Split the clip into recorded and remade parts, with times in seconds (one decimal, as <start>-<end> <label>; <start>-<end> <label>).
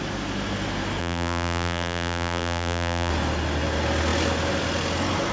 0.0-1.0 recorded; 1.0-3.1 remade; 3.1-5.3 recorded